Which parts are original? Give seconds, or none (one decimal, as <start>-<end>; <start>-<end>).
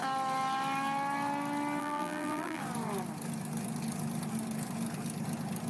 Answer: 0.0-1.8; 2.6-5.7